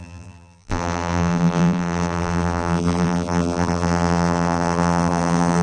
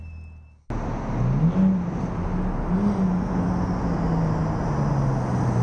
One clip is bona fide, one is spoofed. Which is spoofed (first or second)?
first